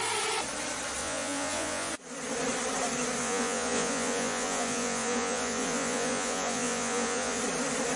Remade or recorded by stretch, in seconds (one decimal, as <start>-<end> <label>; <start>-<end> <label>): 0.0-1.0 recorded; 1.0-1.9 remade; 1.9-3.2 recorded; 3.2-7.4 remade; 7.4-8.0 recorded